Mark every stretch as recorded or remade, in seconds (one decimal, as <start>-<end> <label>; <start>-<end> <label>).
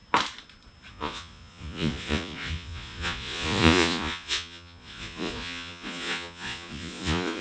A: 0.0-0.9 recorded; 0.9-7.4 remade